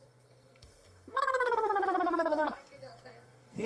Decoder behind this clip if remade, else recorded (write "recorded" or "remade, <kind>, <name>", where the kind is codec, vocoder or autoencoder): remade, codec, SNAC